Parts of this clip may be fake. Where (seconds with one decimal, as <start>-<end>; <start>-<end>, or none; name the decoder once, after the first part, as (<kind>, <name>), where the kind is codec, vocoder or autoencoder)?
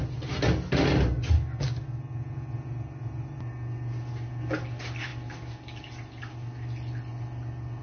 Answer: none